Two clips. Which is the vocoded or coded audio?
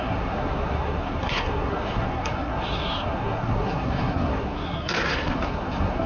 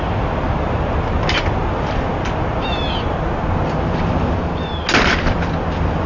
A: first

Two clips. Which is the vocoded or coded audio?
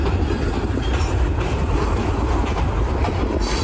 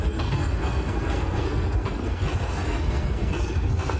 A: second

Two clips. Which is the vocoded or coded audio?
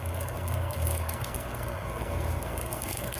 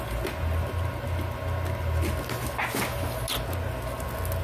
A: first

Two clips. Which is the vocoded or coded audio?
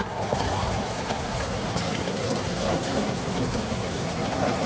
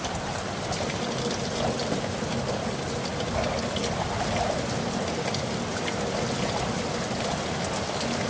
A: first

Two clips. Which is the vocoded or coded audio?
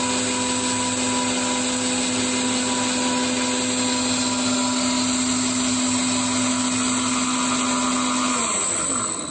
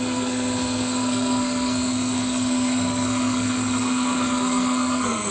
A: second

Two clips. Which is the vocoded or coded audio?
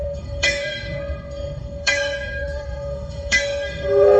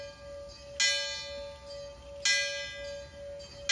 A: first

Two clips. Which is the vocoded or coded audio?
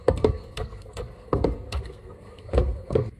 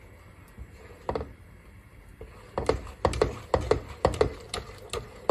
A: first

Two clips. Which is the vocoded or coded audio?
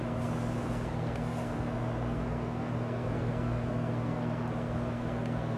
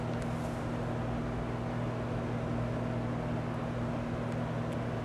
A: first